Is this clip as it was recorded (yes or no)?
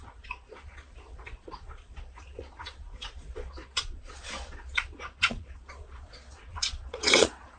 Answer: no